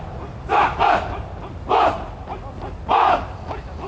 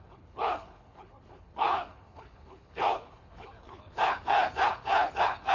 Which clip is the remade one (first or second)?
second